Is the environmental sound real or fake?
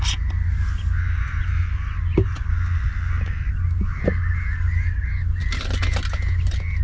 real